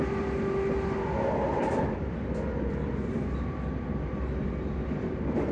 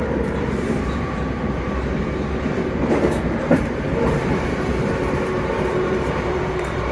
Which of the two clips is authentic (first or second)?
first